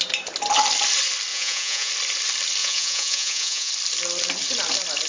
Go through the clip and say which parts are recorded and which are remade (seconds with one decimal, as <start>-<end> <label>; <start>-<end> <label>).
0.0-1.3 recorded; 1.3-1.9 remade; 1.9-2.6 recorded; 2.6-3.7 remade; 3.7-5.1 recorded